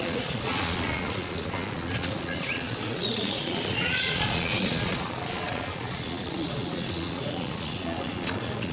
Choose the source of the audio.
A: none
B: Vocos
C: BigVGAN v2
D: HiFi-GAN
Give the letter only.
B